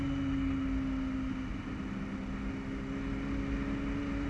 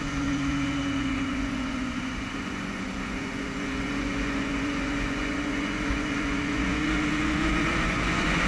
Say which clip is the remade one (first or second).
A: second